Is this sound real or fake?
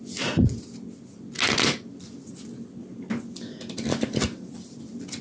real